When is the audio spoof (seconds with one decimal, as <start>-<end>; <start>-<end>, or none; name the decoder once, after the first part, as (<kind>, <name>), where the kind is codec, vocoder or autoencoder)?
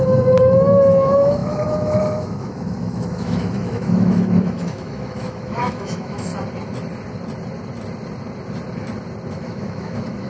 0.0-6.3 (autoencoder, DAC-VAE); 9.3-10.3